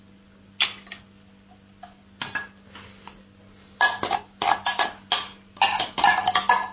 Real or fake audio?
real